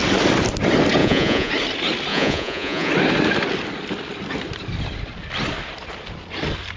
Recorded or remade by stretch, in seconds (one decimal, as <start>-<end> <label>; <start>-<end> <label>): 0.0-1.0 recorded; 1.0-1.5 remade; 1.5-2.1 recorded; 2.1-2.9 remade; 2.9-6.8 recorded